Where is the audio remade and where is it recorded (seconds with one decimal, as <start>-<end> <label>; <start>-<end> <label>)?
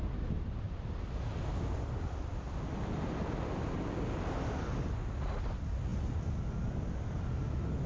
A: 0.0-7.9 recorded